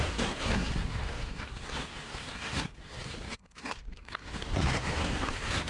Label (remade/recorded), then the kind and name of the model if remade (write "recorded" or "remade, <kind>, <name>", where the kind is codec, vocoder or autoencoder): remade, codec, SNAC